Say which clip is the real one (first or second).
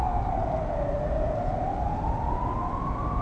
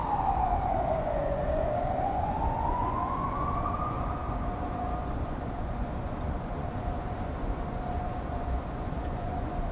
first